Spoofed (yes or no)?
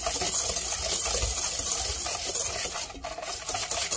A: no